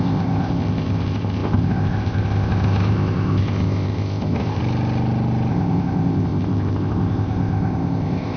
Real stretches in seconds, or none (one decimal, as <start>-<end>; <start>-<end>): 4.6-5.5